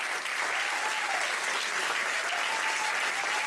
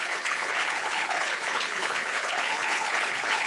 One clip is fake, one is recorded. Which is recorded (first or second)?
first